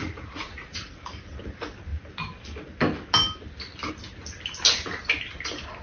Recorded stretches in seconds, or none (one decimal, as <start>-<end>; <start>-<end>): 0.9-5.8